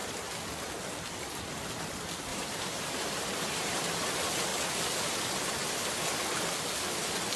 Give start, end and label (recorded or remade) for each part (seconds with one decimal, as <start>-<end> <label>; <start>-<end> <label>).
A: 0.0-2.3 recorded; 2.3-4.1 remade; 4.1-7.4 recorded

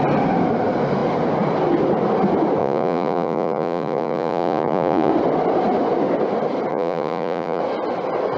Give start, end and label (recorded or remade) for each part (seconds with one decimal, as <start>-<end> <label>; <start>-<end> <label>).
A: 0.0-2.6 recorded; 2.6-5.1 remade; 5.1-6.7 recorded; 6.7-7.6 remade; 7.6-8.4 recorded

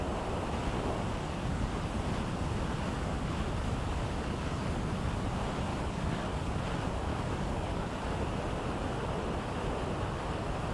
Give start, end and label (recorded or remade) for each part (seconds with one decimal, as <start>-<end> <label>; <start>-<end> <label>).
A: 0.0-1.2 recorded; 1.2-1.7 remade; 1.7-2.9 recorded; 2.9-5.2 remade; 5.2-5.7 recorded; 5.7-6.5 remade; 6.5-7.1 recorded; 7.1-7.9 remade; 7.9-10.7 recorded

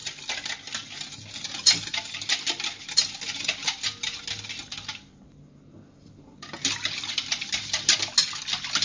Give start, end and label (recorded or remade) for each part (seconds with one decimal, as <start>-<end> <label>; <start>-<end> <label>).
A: 0.0-8.8 recorded

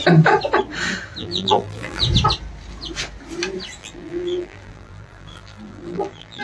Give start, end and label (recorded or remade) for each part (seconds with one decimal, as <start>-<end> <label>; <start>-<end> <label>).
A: 0.0-1.2 recorded; 1.2-2.0 remade; 2.0-3.8 recorded; 3.8-6.4 remade